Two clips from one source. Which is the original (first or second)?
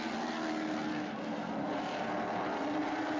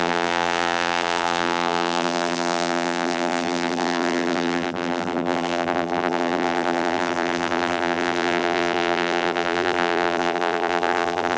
first